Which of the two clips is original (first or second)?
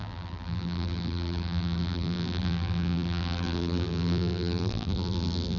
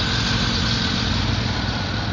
second